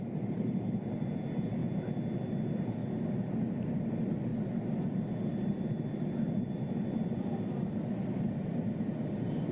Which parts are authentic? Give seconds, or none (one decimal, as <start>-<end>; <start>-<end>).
0.0-5.3